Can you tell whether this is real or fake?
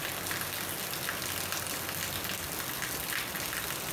real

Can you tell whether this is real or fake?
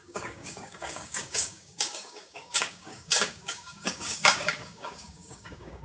fake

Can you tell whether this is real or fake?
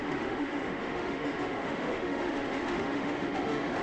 fake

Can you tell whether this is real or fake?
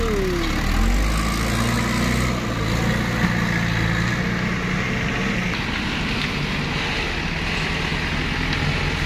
real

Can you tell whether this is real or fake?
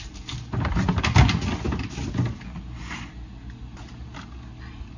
real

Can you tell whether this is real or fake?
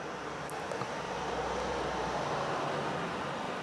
real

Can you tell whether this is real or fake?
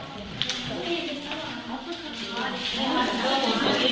real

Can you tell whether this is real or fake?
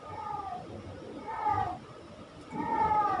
real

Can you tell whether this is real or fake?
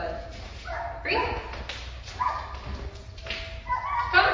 real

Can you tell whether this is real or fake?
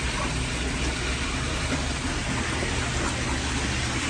real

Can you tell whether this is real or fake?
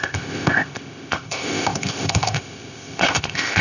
fake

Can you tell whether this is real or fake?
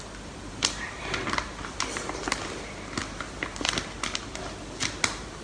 real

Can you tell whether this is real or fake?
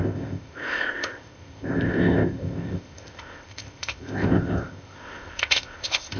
fake